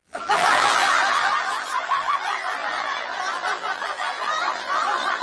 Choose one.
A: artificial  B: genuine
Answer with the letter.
A